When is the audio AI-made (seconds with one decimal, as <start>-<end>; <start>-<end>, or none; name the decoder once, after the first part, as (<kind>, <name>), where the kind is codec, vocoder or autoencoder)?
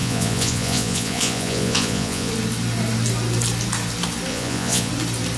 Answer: 0.0-2.3 (vocoder, Vocos); 4.3-4.9